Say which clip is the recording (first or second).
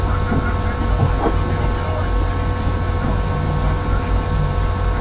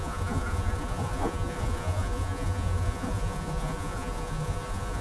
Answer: first